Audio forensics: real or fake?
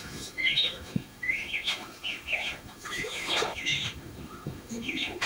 fake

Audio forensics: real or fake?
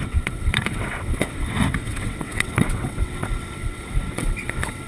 fake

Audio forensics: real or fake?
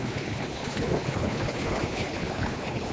fake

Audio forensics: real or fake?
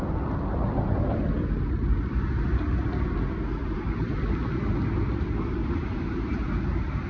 real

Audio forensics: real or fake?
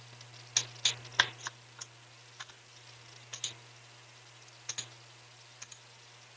real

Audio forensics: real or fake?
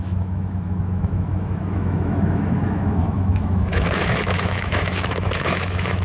fake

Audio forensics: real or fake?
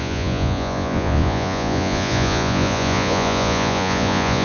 fake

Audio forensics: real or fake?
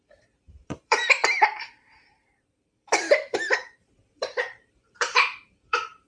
fake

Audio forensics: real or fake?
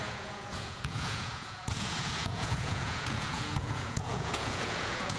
fake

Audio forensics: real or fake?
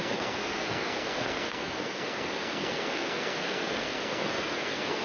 fake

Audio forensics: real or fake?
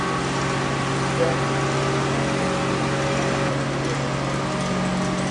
real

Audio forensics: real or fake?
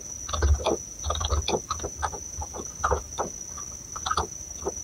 real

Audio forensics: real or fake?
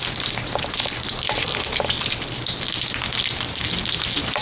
real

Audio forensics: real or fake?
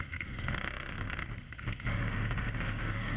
fake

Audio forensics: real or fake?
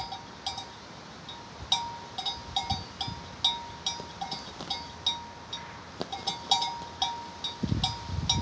real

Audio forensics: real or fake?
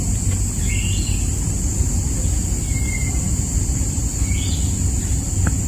real